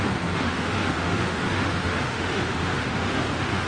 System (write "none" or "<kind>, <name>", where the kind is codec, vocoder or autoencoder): autoencoder, DAC-VAE